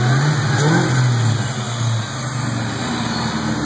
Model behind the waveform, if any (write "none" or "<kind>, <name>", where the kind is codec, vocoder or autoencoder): none